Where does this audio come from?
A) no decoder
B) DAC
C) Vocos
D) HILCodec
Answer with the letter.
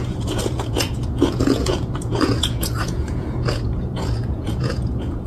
C